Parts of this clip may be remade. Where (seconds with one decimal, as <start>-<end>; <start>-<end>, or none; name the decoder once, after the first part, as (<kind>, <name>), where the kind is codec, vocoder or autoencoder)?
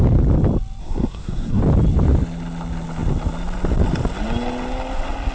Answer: 0.8-1.6 (codec, SNAC)